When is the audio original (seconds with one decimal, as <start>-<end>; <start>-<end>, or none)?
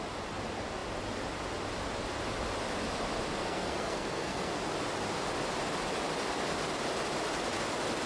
0.0-3.4; 4.5-8.1